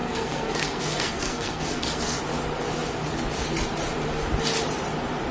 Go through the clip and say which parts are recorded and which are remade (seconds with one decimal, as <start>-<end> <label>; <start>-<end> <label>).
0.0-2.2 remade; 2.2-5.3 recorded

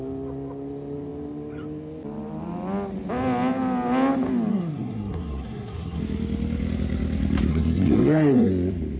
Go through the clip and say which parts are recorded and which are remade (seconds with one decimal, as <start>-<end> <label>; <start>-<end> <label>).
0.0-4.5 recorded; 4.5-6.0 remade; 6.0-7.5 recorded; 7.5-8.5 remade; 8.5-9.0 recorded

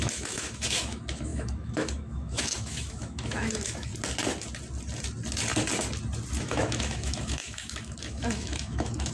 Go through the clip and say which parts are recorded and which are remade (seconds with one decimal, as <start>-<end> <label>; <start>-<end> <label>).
0.0-3.9 remade; 3.9-6.4 recorded; 6.4-9.1 remade

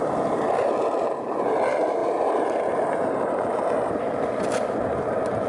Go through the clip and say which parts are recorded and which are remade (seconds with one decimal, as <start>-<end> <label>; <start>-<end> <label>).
0.0-2.0 recorded; 2.0-4.4 remade; 4.4-5.5 recorded

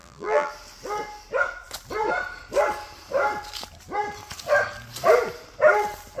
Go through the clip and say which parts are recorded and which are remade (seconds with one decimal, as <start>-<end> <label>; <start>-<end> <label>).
0.0-0.5 remade; 0.5-6.2 recorded

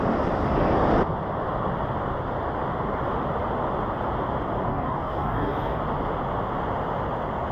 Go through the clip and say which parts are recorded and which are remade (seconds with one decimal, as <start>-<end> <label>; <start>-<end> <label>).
0.0-4.7 recorded; 4.7-5.8 remade; 5.8-7.5 recorded

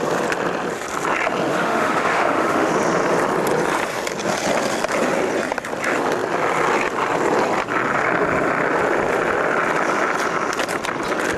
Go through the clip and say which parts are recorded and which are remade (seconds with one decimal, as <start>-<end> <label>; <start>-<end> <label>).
0.0-1.5 recorded; 1.5-2.7 remade; 2.7-11.4 recorded